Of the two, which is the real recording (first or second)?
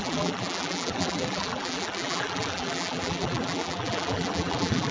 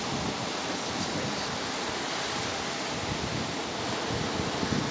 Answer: second